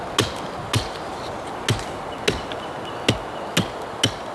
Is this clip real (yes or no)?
yes